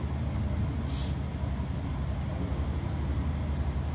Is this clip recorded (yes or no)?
yes